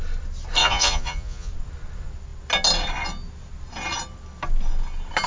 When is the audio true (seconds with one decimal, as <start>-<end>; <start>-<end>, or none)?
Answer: 0.0-0.6; 1.5-5.3